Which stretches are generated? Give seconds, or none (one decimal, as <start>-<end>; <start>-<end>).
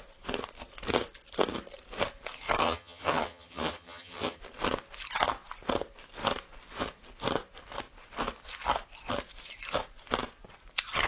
2.6-4.4